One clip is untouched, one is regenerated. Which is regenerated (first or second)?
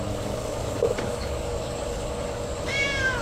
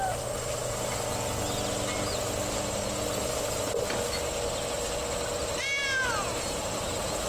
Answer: first